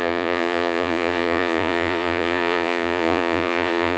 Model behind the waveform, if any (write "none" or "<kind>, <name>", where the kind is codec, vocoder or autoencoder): vocoder, Vocos